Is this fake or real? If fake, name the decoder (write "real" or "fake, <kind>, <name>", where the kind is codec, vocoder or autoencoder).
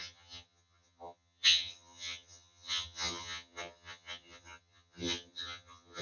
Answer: fake, vocoder, HiFi-GAN